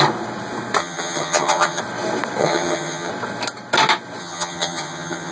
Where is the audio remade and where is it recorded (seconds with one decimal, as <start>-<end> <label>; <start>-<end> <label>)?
0.0-0.8 recorded; 0.8-1.8 remade; 1.8-2.4 recorded; 2.4-3.1 remade; 3.1-4.2 recorded; 4.2-5.3 remade